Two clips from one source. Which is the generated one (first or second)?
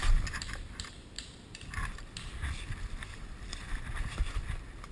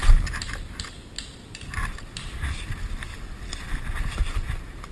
first